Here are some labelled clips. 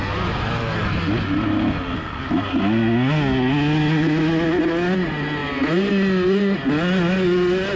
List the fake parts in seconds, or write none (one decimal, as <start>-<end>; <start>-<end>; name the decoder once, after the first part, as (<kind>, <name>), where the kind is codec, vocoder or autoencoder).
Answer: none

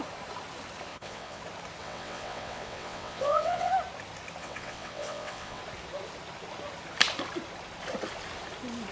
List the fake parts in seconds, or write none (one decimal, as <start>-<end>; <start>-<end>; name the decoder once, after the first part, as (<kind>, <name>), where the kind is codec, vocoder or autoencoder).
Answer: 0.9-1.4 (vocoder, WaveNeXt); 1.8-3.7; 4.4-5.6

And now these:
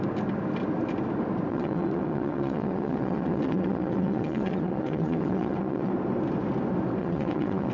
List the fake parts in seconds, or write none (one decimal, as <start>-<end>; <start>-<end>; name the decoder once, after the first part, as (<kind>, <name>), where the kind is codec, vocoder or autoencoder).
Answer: 1.5-5.9 (vocoder, WaveNeXt); 7.0-7.7

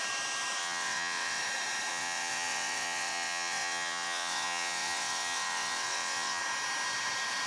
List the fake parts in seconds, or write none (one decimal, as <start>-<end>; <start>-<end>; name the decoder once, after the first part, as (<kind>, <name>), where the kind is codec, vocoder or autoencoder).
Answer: 0.6-1.4 (vocoder, WaveNeXt); 1.9-6.4

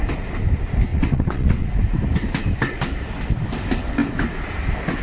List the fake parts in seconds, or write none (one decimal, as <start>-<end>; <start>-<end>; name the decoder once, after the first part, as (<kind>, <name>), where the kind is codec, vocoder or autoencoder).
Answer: 0.9-1.7 (vocoder, WaveNeXt)

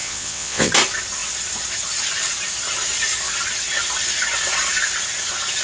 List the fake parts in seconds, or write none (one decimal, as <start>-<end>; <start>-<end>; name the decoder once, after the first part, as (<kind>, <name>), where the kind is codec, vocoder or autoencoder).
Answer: 0.0-0.7 (vocoder, WaveNeXt)

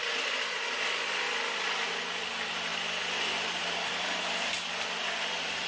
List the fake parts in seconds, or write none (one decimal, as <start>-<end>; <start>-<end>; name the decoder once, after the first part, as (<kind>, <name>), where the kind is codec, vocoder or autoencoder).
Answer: none